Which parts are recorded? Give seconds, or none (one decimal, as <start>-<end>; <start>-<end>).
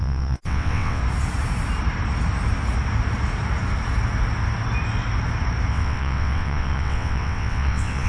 1.0-5.7